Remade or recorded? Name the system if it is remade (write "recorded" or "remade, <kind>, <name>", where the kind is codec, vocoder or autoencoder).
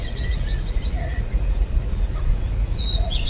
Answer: remade, vocoder, Vocos